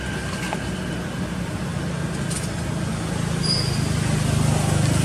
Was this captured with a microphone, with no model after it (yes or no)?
yes